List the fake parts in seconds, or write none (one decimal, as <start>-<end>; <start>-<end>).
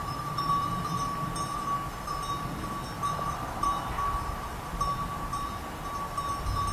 0.0-0.8